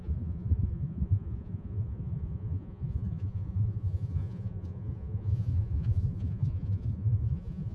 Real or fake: fake